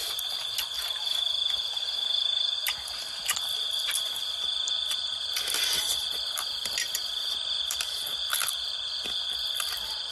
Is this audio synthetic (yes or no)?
no